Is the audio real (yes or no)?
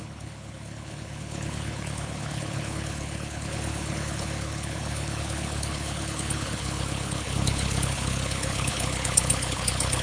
no